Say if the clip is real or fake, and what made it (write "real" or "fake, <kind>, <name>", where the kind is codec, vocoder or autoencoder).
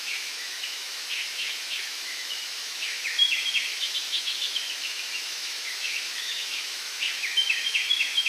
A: fake, autoencoder, DAC-VAE